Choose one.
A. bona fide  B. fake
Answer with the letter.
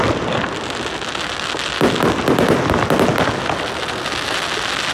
A